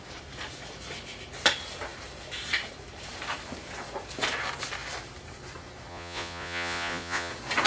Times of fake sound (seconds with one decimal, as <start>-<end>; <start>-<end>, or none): 5.9-7.3